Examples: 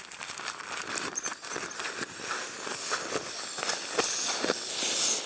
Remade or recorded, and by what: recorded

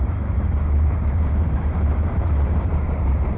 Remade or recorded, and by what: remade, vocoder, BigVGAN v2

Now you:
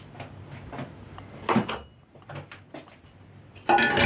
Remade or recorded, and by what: recorded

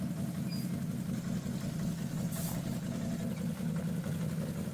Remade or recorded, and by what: recorded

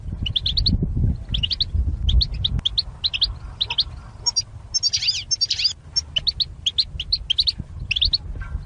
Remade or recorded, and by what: recorded